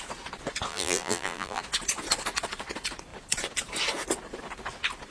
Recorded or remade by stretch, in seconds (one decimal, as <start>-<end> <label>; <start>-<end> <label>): 0.0-0.7 recorded; 0.7-1.6 remade; 1.6-5.1 recorded